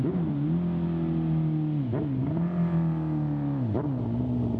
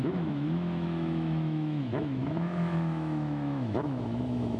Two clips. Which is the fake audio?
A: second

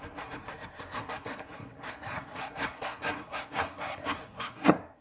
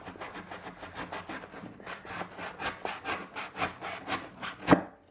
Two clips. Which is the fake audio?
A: first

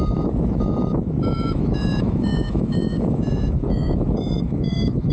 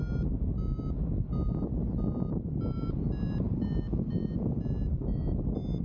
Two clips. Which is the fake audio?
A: first